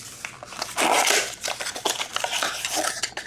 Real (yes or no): yes